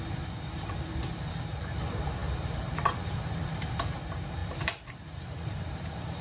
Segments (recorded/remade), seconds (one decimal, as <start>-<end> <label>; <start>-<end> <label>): 0.0-6.2 remade